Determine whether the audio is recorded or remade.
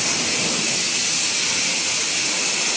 recorded